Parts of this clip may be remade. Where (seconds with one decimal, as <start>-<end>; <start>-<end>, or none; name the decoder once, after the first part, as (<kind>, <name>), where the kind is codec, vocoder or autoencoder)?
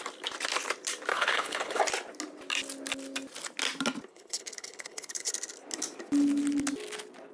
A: 1.1-1.8 (codec, HILCodec); 4.1-5.3